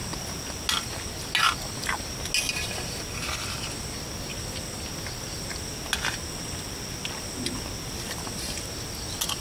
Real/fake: real